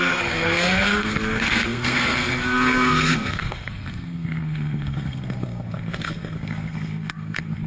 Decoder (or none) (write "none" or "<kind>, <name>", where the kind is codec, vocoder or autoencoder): codec, SNAC